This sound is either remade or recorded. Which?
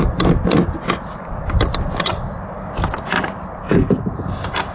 recorded